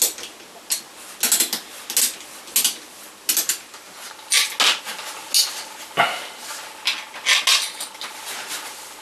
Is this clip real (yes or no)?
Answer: yes